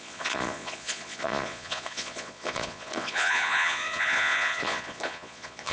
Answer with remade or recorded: remade